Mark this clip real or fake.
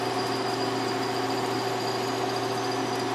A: real